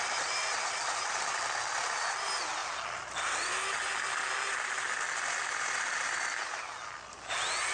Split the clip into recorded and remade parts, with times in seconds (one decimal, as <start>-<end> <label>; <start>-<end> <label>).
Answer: 0.0-7.7 recorded

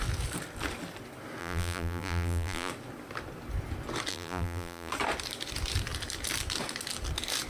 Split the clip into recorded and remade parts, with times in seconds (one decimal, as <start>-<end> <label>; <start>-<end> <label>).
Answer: 0.0-1.4 recorded; 1.4-2.7 remade; 2.7-4.1 recorded; 4.1-4.9 remade; 4.9-7.5 recorded

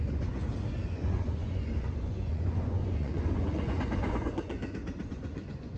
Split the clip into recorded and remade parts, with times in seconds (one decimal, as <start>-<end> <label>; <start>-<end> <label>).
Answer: 0.0-0.4 remade; 0.4-0.9 recorded; 0.9-4.6 remade; 4.6-5.1 recorded; 5.1-5.8 remade

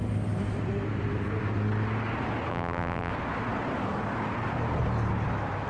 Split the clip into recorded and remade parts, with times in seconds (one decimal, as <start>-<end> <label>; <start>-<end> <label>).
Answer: 0.0-2.5 recorded; 2.5-3.1 remade; 3.1-5.7 recorded

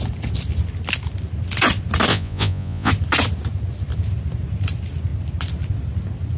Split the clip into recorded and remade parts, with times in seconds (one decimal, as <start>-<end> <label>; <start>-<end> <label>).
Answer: 0.0-2.1 recorded; 2.1-2.9 remade; 2.9-6.4 recorded

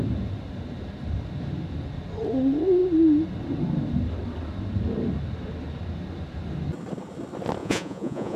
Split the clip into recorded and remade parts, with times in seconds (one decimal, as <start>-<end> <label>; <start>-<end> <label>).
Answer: 0.0-7.6 recorded; 7.6-8.4 remade

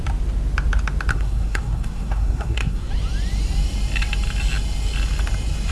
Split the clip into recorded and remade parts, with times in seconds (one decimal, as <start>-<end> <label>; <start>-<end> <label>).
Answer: 0.0-1.1 recorded; 1.1-2.9 remade; 2.9-5.7 recorded